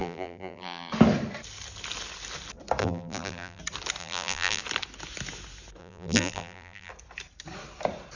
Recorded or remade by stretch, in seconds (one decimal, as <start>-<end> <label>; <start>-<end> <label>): 0.0-0.9 remade; 0.9-2.8 recorded; 2.8-3.6 remade; 3.6-4.0 recorded; 4.0-4.6 remade; 4.6-5.8 recorded; 5.8-6.9 remade; 6.9-8.2 recorded